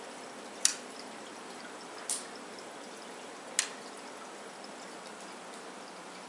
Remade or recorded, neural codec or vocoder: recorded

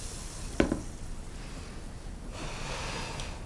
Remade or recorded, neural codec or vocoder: recorded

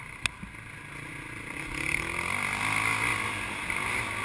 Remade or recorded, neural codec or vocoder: recorded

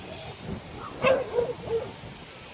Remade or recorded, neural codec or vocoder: recorded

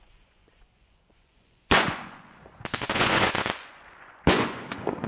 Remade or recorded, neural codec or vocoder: remade, vocoder, Vocos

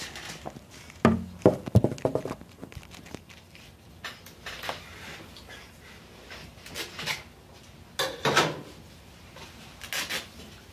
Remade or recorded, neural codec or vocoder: recorded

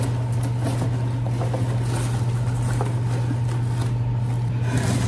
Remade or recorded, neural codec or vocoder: recorded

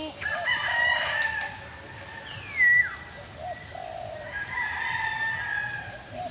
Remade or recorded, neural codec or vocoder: recorded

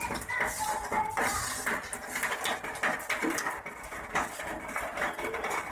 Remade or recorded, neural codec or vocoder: recorded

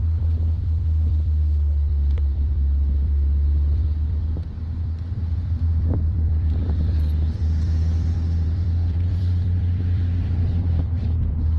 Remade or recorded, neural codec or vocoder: remade, vocoder, BigVGAN v2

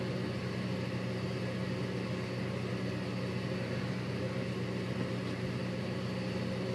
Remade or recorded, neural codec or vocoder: recorded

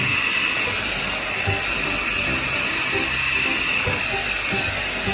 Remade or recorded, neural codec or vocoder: recorded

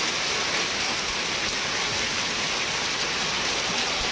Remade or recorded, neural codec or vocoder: recorded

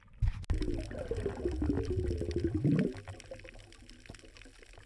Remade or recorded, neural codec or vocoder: recorded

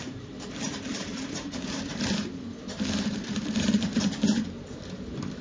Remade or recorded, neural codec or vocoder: remade, vocoder, BigVGAN v2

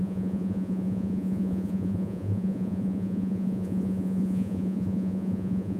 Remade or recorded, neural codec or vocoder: remade, vocoder, Vocos